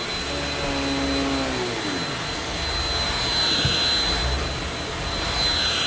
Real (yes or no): yes